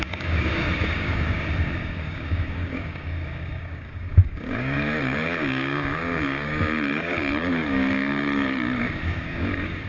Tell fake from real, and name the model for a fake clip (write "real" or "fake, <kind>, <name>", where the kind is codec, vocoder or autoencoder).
fake, codec, DAC